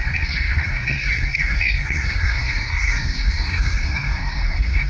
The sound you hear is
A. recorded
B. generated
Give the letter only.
B